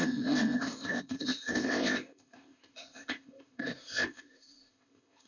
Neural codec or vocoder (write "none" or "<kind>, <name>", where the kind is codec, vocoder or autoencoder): codec, ZipCodec